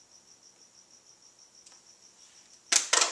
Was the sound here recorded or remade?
recorded